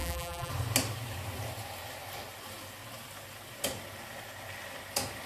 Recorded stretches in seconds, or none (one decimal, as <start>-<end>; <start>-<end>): 0.5-5.3